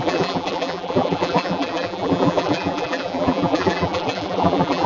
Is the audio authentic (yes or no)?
no